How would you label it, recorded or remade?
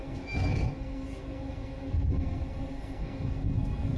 remade